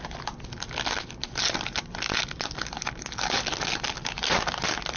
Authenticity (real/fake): real